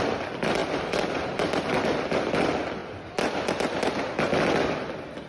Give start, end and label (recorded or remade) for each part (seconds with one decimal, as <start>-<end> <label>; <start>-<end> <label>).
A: 0.0-5.3 recorded